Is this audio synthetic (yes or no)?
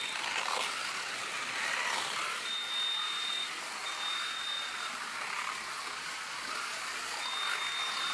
no